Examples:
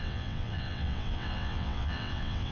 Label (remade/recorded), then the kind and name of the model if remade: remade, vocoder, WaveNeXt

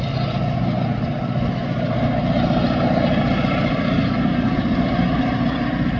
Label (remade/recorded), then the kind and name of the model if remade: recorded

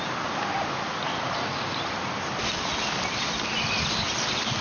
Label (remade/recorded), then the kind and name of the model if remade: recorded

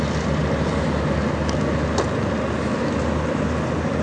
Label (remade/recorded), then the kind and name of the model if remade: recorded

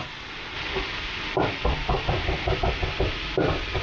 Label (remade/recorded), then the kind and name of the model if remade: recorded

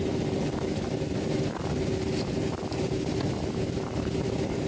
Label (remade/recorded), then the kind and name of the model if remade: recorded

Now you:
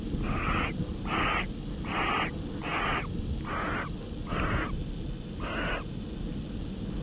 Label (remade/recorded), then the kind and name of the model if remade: recorded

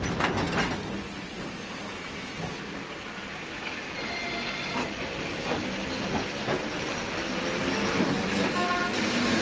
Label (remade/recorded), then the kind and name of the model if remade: recorded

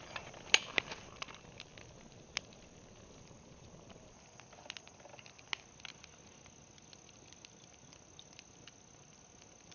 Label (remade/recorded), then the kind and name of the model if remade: recorded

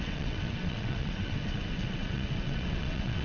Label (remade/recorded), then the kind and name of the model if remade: remade, vocoder, WaveNeXt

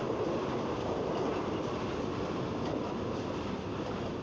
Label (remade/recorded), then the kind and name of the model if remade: recorded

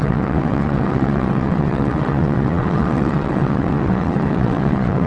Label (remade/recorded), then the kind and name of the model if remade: remade, vocoder, WaveNeXt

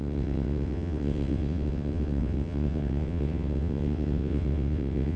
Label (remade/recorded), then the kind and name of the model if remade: remade, vocoder, WaveNeXt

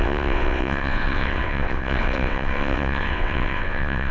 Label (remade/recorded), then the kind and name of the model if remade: remade, vocoder, WaveNeXt